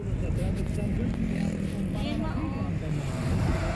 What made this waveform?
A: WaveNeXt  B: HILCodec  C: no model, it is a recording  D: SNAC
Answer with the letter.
C